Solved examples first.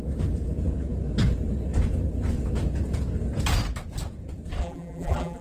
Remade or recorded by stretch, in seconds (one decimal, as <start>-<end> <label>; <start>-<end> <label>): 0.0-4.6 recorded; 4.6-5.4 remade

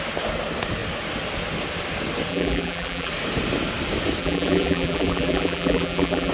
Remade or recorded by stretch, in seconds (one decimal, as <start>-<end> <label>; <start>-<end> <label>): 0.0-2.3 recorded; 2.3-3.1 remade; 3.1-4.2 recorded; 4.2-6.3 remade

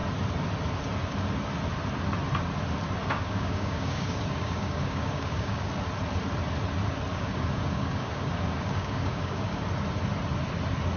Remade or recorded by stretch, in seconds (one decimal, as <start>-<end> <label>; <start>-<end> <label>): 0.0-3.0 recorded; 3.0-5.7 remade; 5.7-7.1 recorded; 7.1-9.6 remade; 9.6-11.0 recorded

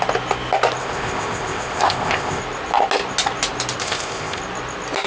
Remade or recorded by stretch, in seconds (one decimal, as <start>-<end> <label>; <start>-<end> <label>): 0.0-0.8 recorded; 0.8-2.4 remade; 2.4-3.8 recorded; 3.8-4.4 remade; 4.4-5.1 recorded

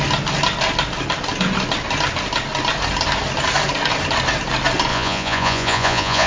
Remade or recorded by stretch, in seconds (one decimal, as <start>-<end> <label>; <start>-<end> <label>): 0.0-4.9 recorded; 4.9-6.3 remade

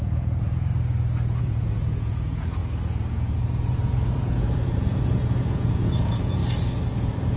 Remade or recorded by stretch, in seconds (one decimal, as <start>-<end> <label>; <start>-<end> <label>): 0.0-0.7 remade; 0.7-1.4 recorded; 1.4-2.6 remade; 2.6-3.1 recorded; 3.1-6.4 remade; 6.4-7.0 recorded; 7.0-7.4 remade

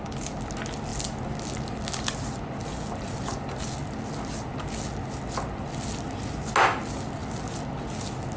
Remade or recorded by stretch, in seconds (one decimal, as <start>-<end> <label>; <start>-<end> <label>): 0.0-8.4 recorded

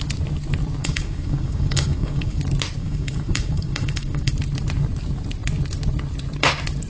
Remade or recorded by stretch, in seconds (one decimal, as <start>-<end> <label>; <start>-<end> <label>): 0.0-0.8 recorded; 0.8-2.4 remade; 2.4-2.8 recorded; 2.8-4.3 remade; 4.3-6.9 recorded